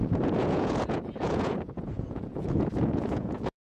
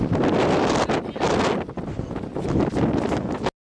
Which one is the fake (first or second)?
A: first